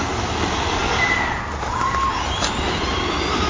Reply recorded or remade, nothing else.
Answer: recorded